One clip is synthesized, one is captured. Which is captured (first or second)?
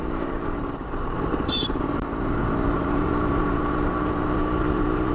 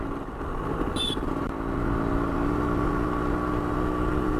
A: second